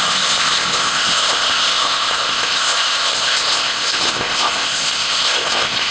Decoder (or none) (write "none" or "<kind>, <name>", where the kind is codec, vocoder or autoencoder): codec, ZipCodec